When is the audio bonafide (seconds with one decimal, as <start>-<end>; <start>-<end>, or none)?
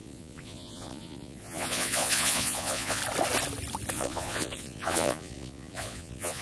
3.0-3.9